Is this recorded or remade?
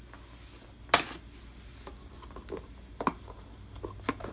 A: recorded